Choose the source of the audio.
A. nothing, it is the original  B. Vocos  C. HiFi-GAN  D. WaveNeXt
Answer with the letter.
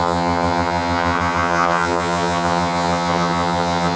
C